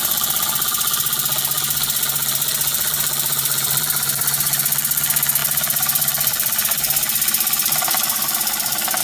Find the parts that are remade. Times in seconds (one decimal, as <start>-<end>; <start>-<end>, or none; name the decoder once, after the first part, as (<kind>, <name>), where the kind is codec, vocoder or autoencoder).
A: 2.7-4.2 (vocoder, BigVGAN v2); 5.4-9.0

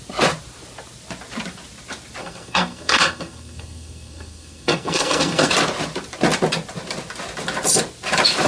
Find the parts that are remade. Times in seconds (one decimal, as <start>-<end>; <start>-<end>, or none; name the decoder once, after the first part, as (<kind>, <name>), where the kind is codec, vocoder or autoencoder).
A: 2.2-5.5 (codec, SNAC)

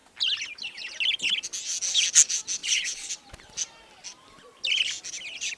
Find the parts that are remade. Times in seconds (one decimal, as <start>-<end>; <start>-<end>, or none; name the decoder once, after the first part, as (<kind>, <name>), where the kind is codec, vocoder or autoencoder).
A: 2.6-3.1 (vocoder, Vocos)

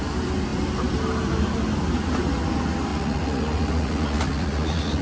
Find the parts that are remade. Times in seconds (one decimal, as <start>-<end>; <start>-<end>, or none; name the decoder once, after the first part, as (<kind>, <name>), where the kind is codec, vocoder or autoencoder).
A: 2.9-5.0 (vocoder, Vocos)

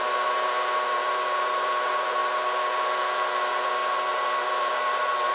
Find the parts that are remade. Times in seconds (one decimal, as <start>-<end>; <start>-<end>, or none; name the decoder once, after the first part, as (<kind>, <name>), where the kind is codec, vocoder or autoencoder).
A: 0.0-5.3 (vocoder, BigVGAN v2)

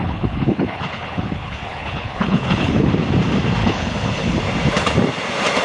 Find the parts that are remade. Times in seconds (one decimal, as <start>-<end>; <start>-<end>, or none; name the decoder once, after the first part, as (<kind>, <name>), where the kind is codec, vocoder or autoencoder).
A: 0.0-2.9 (codec, HILCodec); 3.6-4.4

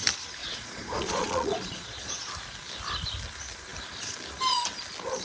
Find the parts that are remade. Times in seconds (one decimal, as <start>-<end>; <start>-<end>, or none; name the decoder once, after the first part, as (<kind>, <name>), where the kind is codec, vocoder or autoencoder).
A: 0.4-2.3 (vocoder, Vocos)